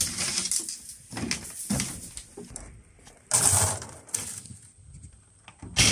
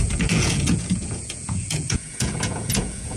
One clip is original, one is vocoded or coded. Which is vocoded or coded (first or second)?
second